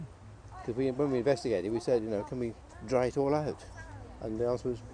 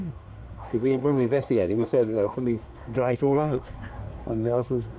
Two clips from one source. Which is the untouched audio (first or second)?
first